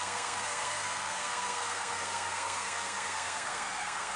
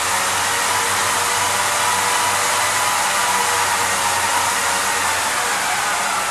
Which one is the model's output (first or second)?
first